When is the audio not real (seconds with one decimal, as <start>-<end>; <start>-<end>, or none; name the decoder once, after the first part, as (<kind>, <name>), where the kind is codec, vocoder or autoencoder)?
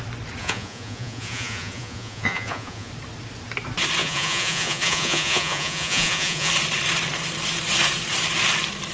0.4-2.9 (vocoder, Vocos); 4.0-6.5